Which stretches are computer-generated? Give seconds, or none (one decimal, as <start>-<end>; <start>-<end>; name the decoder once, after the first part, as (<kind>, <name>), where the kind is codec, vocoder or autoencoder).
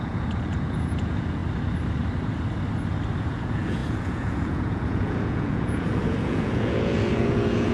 0.0-1.4 (vocoder, Vocos); 3.2-7.7